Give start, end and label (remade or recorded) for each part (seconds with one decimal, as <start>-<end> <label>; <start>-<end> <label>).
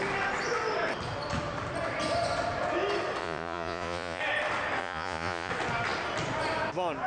0.0-3.2 recorded; 3.2-4.2 remade; 4.2-4.8 recorded; 4.8-5.5 remade; 5.5-7.1 recorded